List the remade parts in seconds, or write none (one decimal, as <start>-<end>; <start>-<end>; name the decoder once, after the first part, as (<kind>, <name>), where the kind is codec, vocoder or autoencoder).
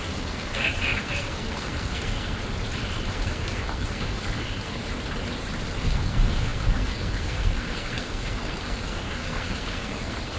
0.0-2.4 (codec, SNAC); 3.1-4.8; 5.9-10.4